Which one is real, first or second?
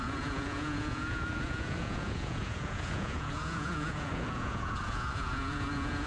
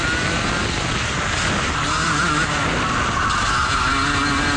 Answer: second